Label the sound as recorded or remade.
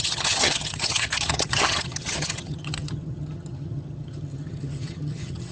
remade